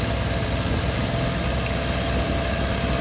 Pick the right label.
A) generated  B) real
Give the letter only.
B